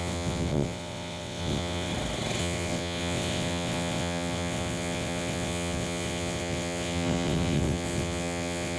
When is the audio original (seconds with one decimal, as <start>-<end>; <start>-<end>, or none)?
1.9-2.4